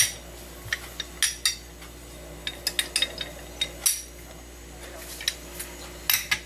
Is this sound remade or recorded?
recorded